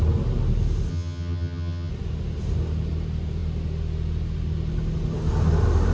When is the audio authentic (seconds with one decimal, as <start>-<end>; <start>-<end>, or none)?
0.0-0.9; 1.9-5.9